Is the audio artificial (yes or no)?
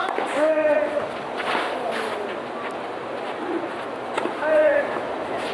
no